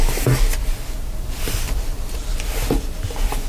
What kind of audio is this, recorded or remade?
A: recorded